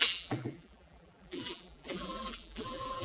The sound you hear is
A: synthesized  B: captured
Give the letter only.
A